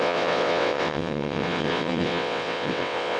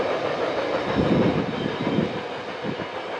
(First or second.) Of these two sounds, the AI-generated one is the first